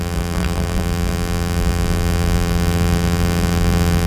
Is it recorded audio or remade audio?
remade